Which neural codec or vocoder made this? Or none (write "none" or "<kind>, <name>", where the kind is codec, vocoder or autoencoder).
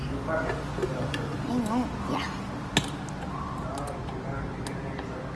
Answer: none